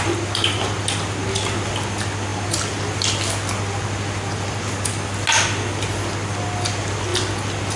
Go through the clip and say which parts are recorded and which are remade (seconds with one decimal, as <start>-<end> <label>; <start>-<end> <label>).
0.0-7.8 recorded